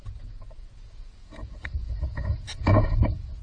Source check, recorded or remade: remade